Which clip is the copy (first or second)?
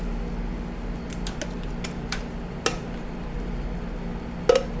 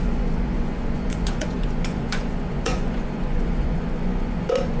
second